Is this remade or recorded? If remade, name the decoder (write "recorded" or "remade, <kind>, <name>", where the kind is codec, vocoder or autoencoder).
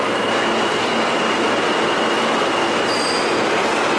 recorded